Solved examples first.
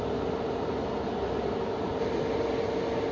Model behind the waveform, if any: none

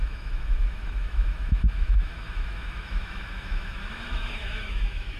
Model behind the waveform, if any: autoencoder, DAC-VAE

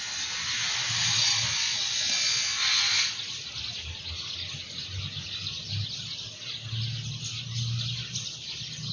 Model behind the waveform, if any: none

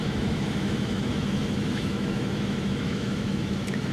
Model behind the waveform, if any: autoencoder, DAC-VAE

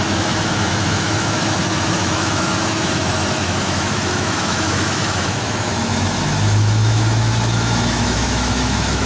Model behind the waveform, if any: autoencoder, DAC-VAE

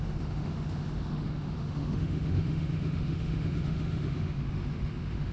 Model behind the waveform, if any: autoencoder, DAC-VAE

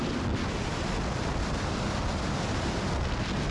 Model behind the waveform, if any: none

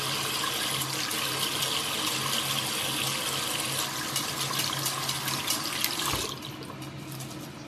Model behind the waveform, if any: none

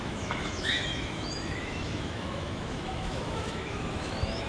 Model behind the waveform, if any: autoencoder, DAC-VAE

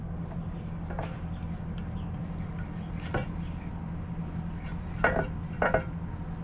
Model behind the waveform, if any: none